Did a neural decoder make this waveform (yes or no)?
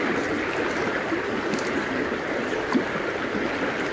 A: no